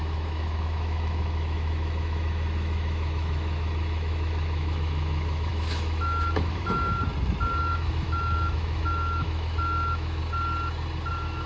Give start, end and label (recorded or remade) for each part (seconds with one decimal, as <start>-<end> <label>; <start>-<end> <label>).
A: 0.0-7.0 remade; 7.0-7.6 recorded; 7.6-10.2 remade; 10.2-11.1 recorded; 11.1-11.5 remade